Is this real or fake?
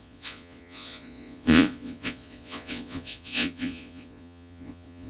fake